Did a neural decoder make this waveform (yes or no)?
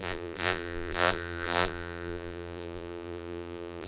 yes